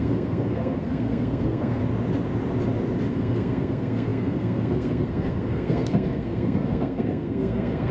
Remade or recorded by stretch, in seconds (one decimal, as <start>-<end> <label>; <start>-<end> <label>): 0.0-1.8 remade; 1.8-3.1 recorded; 3.1-7.9 remade